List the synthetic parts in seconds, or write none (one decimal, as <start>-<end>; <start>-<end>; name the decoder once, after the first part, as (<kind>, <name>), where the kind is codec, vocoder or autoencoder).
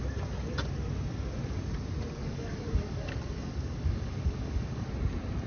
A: 2.2-4.9 (codec, DAC)